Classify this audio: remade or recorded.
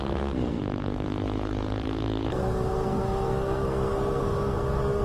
remade